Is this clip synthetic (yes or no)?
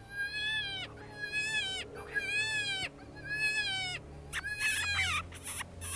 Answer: no